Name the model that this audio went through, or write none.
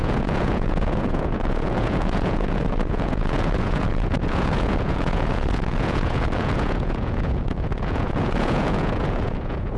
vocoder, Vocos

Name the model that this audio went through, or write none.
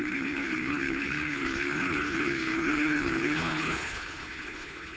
codec, HILCodec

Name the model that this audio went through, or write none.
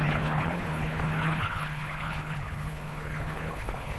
codec, HILCodec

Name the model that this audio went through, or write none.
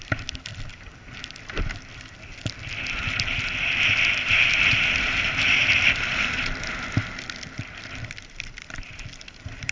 none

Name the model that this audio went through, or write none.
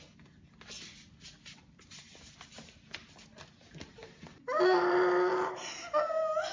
none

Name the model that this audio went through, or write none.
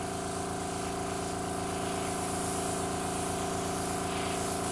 none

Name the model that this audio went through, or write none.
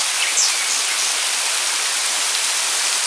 none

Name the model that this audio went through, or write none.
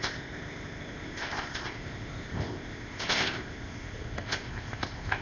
codec, ZipCodec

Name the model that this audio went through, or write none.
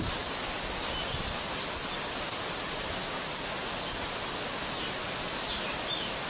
none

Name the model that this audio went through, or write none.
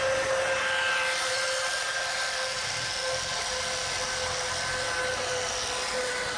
none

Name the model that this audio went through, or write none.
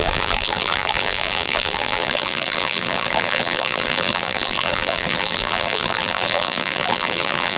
vocoder, BigVGAN v2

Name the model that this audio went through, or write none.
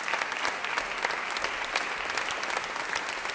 none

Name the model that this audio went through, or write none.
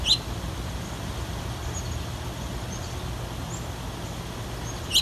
none